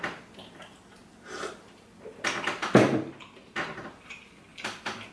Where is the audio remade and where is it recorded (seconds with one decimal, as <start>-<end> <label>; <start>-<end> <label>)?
0.0-5.1 recorded